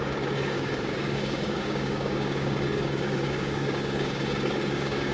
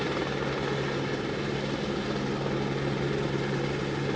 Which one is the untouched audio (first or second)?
second